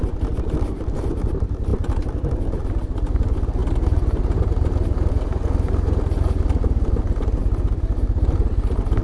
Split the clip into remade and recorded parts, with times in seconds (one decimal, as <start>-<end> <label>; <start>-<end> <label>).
0.0-9.0 recorded